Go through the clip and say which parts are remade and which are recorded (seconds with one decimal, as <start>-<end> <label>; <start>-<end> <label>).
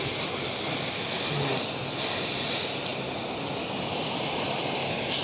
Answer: 0.0-5.2 recorded